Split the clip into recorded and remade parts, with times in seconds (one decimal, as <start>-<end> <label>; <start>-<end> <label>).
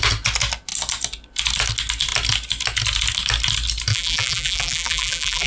0.0-3.9 recorded; 3.9-5.5 remade